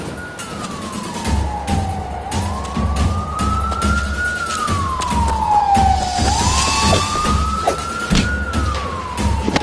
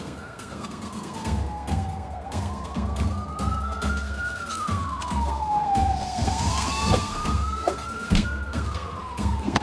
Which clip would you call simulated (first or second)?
second